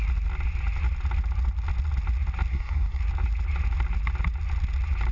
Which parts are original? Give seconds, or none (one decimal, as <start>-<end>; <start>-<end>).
0.0-2.5; 3.0-5.1